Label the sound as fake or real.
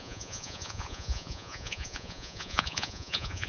fake